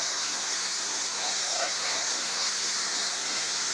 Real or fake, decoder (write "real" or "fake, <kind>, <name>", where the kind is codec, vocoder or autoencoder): fake, codec, SNAC